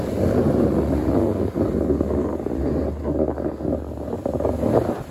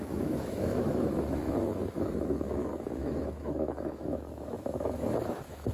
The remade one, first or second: second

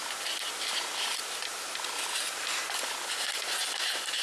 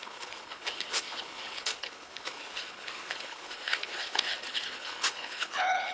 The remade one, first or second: second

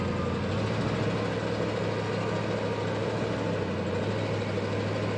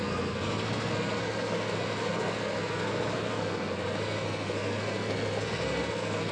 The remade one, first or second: second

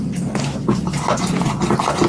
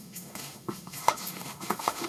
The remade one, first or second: second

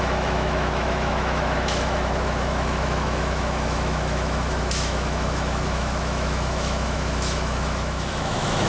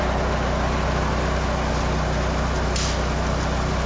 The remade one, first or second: first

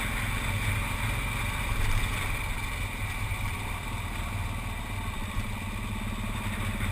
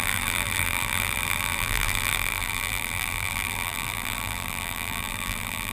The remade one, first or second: second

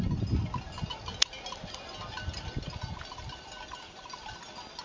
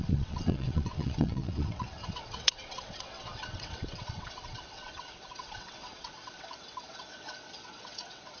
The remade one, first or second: second